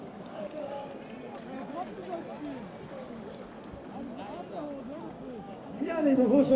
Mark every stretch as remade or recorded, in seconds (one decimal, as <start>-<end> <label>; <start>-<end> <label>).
0.0-0.8 remade; 0.8-4.8 recorded; 4.8-6.6 remade